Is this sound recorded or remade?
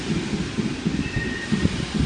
recorded